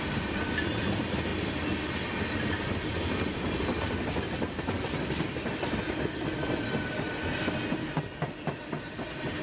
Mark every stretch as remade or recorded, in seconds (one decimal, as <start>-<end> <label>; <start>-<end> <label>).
0.0-9.4 recorded